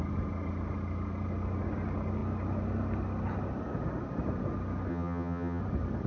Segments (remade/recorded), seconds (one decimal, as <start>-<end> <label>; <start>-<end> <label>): 0.0-4.9 recorded; 4.9-5.6 remade; 5.6-6.1 recorded